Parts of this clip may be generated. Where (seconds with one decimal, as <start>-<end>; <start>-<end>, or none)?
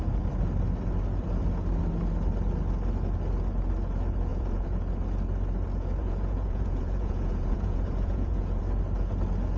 4.3-4.8; 6.0-8.6